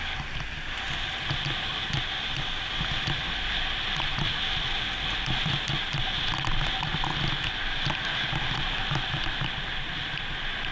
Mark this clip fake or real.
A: real